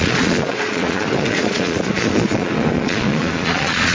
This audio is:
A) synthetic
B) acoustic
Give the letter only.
A